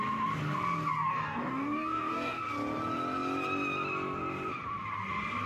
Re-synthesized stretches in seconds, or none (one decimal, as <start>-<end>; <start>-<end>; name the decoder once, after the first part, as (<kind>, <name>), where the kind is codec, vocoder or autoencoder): 1.1-2.4 (codec, DAC)

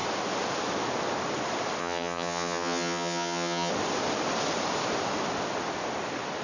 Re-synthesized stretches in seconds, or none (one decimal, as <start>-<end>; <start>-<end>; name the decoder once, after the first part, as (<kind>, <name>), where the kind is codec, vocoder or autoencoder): 1.8-3.7 (vocoder, HiFi-GAN)

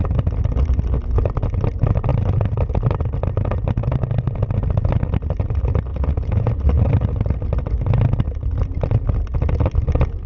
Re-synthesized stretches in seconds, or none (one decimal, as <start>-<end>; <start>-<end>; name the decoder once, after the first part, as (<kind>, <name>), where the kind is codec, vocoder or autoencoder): 5.9-6.5 (vocoder, Vocos)

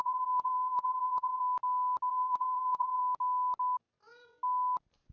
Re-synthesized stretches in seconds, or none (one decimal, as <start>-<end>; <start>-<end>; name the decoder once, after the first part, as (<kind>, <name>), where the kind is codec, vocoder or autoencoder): 0.0-1.4 (vocoder, Vocos); 2.1-3.0